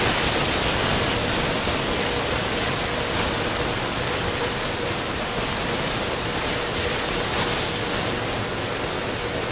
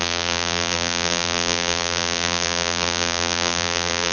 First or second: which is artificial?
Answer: second